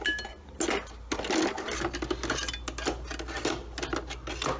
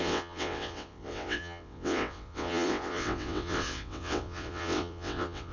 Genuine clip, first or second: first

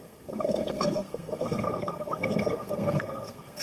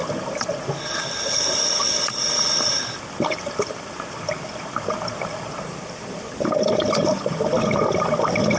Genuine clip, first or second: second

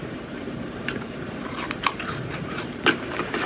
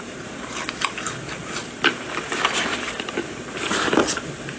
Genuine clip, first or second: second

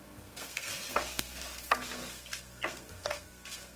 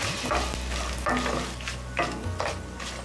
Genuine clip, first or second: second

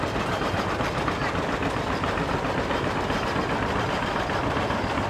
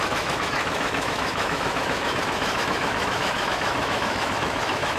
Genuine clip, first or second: first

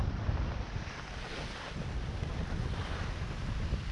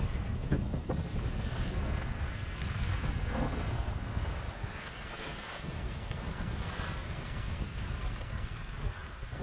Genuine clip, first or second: first